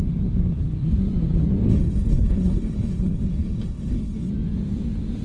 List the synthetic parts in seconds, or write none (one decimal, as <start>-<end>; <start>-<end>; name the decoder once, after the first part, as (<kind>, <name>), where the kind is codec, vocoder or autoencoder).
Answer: 1.7-4.3 (codec, HILCodec)